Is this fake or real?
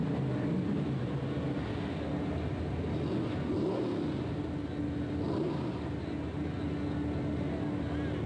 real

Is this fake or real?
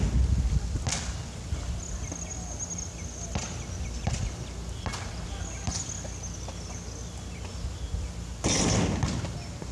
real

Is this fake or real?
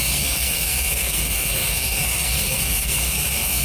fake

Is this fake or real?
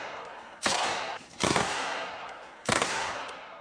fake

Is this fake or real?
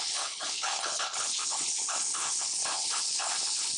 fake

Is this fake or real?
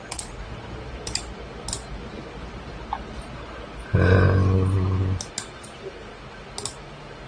real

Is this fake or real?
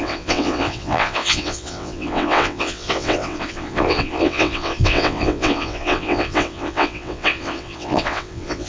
fake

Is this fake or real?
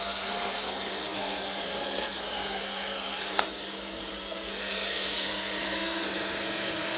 fake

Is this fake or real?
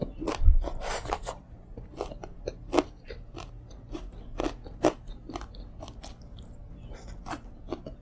real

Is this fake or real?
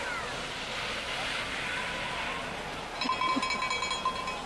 real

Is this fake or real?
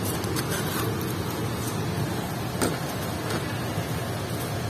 real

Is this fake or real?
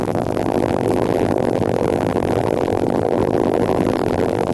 fake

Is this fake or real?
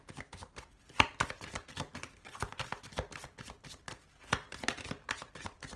real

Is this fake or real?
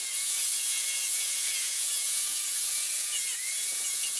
fake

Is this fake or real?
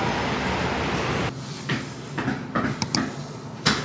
real